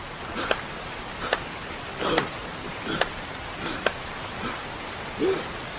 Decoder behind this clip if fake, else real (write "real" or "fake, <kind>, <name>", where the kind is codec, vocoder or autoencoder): real